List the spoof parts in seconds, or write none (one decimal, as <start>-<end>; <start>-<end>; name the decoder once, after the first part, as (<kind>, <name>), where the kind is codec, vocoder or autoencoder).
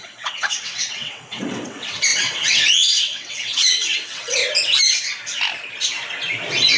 0.0-4.4 (vocoder, WaveNeXt)